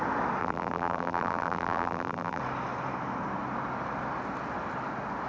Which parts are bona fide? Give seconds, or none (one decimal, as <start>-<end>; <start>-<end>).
0.0-0.4; 2.4-5.3

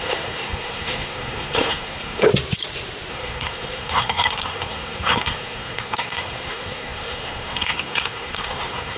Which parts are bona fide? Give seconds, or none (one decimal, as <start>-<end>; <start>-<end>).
2.3-3.1

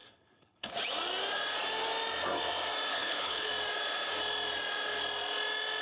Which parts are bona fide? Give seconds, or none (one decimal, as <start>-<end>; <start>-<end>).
0.7-2.9; 3.5-5.8

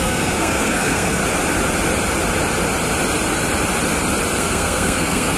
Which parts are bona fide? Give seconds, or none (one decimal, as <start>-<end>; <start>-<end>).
1.2-4.4